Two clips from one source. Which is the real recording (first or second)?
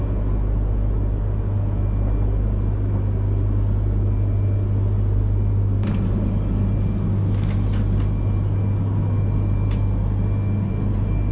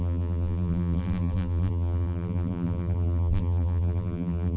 first